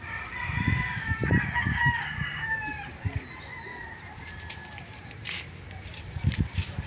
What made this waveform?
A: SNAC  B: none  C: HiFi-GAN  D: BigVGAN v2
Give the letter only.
D